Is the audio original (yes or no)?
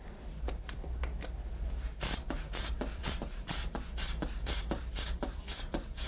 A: no